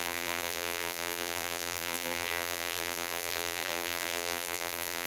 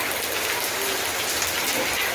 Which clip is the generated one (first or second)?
first